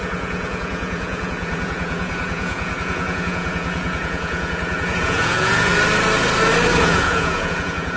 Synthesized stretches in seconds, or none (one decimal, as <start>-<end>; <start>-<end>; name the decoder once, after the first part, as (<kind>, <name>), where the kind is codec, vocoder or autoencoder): 0.0-5.7 (vocoder, Vocos); 6.8-8.0